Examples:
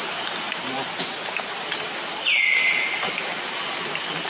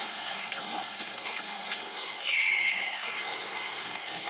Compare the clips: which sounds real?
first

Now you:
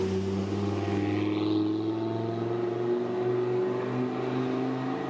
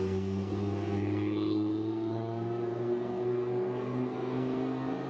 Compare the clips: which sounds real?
first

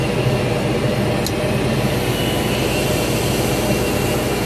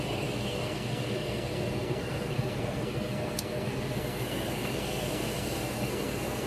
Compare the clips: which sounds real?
first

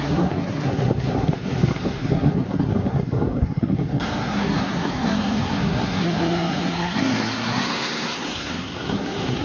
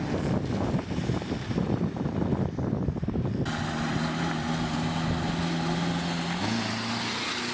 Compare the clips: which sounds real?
second